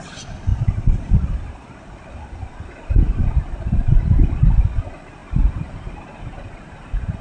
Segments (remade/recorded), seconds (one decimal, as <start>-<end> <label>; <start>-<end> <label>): 0.0-7.2 recorded